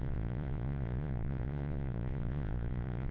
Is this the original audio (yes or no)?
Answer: no